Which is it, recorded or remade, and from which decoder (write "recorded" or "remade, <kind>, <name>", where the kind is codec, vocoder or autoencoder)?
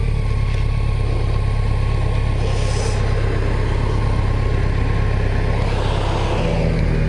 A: recorded